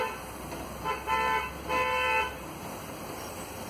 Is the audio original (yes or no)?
yes